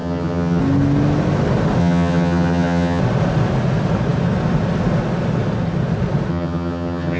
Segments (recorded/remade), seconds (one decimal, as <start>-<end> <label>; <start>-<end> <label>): 0.0-0.6 remade; 0.6-1.8 recorded; 1.8-3.0 remade; 3.0-6.3 recorded; 6.3-7.2 remade